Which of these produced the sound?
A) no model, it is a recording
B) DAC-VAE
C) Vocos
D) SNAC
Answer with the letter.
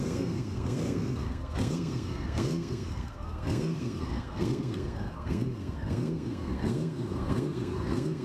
D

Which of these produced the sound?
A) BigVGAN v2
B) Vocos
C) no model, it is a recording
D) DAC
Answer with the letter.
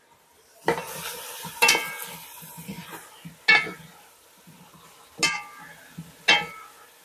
C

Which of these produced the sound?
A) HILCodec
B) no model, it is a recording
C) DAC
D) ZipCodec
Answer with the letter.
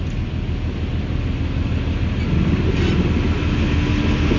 B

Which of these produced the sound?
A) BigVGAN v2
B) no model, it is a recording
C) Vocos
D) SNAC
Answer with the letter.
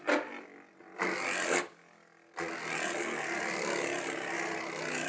B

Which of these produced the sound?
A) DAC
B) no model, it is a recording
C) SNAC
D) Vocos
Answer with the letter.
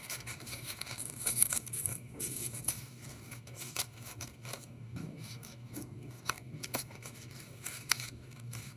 A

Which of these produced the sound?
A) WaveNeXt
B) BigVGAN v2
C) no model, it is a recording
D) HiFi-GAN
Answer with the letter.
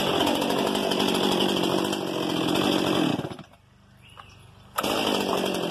C